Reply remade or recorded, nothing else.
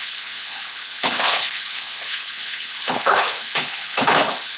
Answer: remade